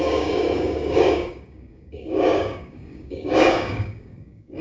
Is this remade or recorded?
remade